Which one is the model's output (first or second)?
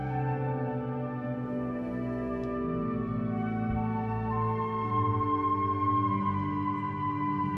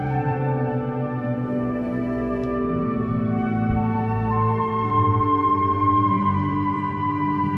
second